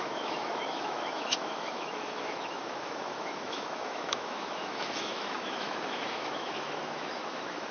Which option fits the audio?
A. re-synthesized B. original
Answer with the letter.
A